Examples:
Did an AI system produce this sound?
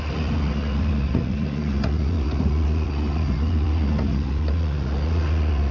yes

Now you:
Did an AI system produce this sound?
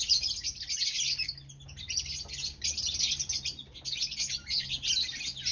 no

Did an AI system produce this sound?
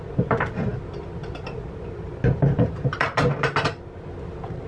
no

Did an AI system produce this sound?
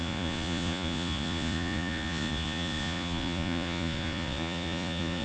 yes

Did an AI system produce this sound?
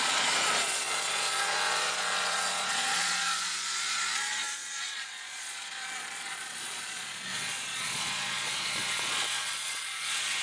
yes